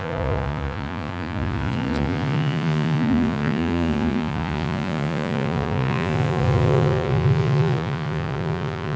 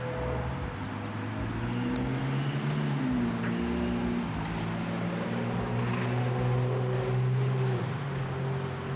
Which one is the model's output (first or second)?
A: first